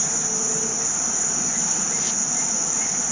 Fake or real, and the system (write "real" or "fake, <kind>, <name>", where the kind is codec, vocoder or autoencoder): real